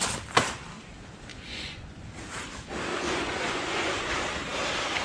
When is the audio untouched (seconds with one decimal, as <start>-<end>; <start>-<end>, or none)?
0.0-1.3; 2.1-2.9; 4.1-5.0